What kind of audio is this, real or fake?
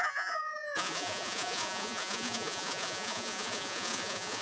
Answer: fake